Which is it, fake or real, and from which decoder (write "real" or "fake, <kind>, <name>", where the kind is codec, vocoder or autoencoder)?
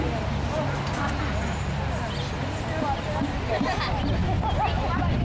real